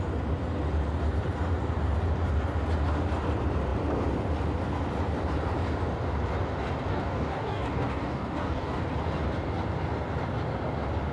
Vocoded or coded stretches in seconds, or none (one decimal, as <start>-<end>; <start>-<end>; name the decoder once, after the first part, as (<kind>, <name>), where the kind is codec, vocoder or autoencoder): 6.9-8.8 (codec, DAC)